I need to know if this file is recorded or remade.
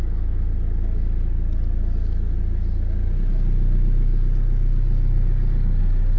recorded